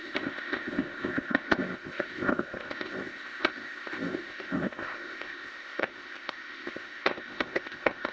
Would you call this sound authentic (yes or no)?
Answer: no